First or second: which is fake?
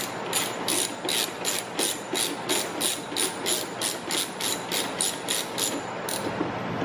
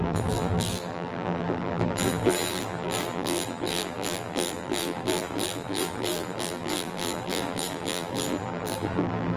second